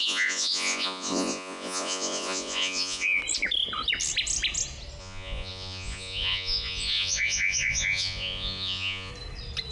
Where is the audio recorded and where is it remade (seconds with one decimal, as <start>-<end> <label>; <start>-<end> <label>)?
0.0-3.2 remade; 3.2-5.0 recorded; 5.0-9.1 remade; 9.1-9.7 recorded